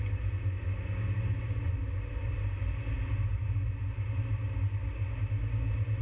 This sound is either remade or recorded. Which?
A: recorded